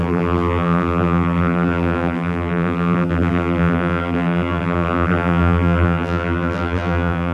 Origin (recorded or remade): remade